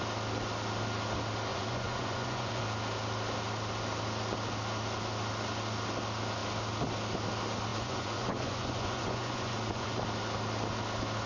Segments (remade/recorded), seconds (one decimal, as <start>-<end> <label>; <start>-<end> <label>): 0.0-1.5 recorded; 1.5-2.6 remade; 2.6-7.7 recorded; 7.7-10.0 remade; 10.0-11.3 recorded